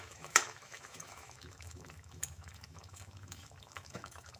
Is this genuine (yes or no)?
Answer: no